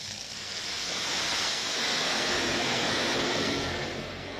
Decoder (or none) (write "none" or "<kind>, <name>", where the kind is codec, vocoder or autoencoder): codec, SNAC